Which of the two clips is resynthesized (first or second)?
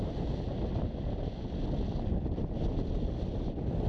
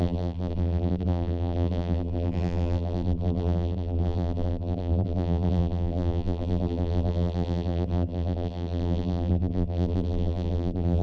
second